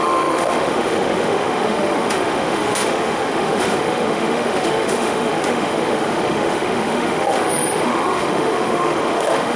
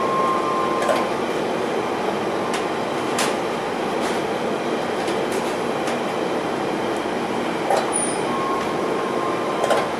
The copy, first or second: first